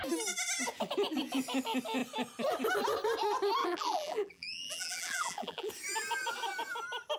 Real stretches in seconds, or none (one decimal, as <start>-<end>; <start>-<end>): 0.0-3.6; 5.7-7.2